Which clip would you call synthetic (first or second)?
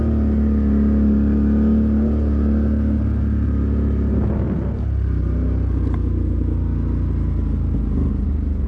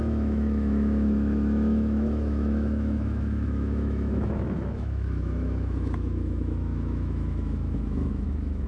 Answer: second